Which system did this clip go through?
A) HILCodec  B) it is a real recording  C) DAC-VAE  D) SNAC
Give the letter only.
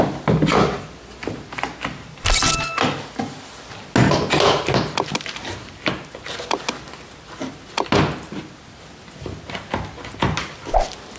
B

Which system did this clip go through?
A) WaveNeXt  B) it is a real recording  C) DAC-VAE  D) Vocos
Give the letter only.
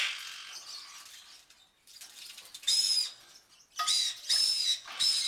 B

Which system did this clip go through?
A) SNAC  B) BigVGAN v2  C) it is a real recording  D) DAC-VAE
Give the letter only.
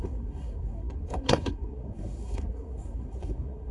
A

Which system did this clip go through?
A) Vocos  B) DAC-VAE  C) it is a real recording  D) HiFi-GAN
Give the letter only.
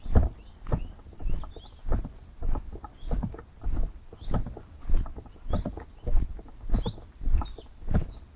C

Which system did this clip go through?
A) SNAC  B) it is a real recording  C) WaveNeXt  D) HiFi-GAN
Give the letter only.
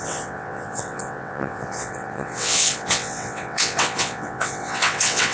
C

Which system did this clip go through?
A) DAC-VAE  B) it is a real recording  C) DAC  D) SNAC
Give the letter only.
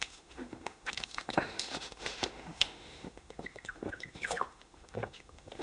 A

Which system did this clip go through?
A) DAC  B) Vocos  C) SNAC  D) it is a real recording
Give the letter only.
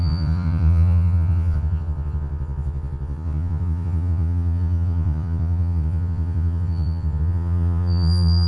B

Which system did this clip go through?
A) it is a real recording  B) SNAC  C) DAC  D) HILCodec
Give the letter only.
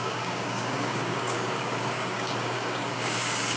C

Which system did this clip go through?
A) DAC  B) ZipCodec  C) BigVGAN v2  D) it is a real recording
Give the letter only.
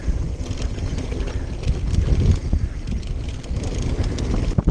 D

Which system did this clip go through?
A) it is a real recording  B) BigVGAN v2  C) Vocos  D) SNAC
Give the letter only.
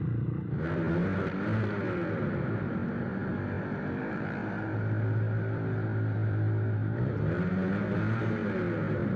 A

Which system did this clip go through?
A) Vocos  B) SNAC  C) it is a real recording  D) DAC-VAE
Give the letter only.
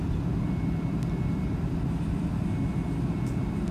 C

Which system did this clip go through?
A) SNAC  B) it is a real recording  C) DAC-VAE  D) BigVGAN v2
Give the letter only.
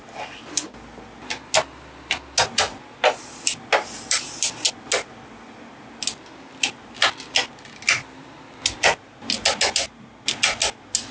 B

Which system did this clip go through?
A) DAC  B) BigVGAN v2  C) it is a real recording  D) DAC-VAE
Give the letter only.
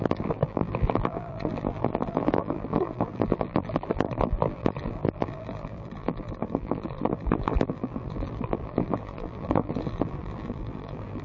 B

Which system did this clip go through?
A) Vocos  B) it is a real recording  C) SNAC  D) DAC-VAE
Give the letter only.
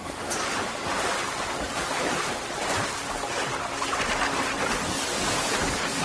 B